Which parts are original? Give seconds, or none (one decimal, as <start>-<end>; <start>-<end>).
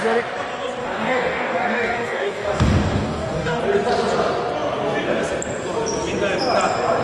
0.0-0.8; 3.6-7.0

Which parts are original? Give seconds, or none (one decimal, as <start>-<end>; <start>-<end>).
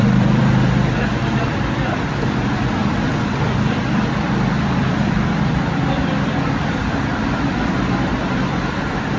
none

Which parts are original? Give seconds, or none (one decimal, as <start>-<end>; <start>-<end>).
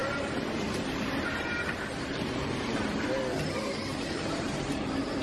3.1-3.9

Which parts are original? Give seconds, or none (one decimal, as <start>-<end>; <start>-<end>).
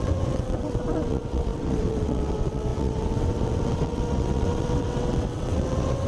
none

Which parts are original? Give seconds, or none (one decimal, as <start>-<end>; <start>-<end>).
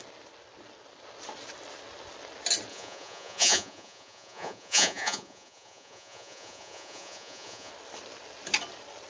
0.0-2.7; 7.7-9.1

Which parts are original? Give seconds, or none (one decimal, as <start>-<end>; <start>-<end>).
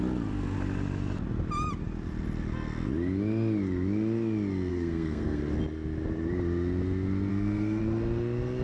0.0-4.7; 5.4-7.3; 7.8-8.6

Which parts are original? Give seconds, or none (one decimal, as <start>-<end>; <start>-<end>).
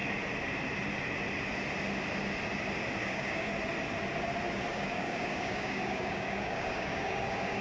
0.0-3.0; 3.5-4.7